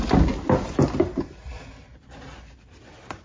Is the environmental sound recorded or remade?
recorded